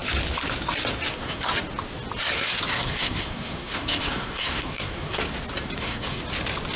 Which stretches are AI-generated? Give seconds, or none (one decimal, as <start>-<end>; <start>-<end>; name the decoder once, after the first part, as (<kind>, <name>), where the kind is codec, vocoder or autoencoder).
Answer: 1.1-1.5 (codec, SNAC); 2.7-5.2; 5.8-6.2